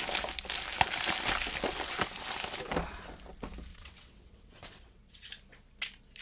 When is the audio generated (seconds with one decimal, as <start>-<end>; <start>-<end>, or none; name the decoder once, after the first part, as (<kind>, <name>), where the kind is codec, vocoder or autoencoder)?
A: 3.7-5.3 (vocoder, WaveNeXt)